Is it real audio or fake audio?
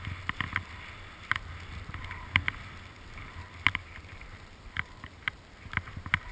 real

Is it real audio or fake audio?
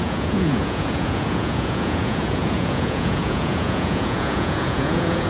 fake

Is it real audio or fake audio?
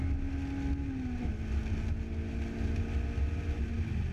real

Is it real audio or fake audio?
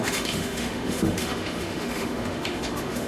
fake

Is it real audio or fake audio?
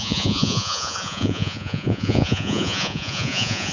fake